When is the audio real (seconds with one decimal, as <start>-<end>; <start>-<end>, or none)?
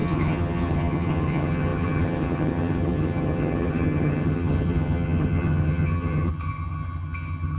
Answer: none